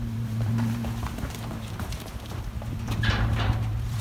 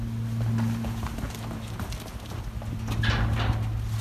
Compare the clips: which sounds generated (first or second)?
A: first